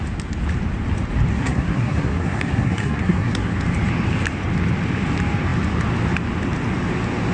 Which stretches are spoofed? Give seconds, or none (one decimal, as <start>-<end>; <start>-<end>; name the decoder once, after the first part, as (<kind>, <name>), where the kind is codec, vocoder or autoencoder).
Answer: 1.3-3.5 (codec, SNAC)